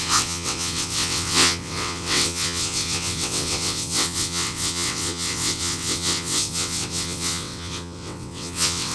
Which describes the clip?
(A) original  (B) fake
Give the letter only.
B